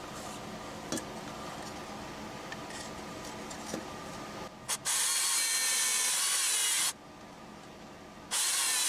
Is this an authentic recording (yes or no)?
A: yes